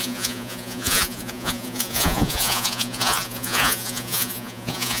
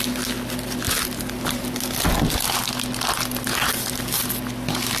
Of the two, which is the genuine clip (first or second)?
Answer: second